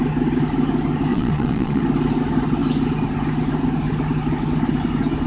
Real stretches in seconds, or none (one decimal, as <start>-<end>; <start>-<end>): 0.0-1.1; 1.8-5.3